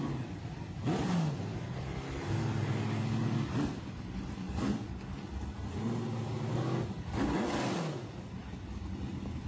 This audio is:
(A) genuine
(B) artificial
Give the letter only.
A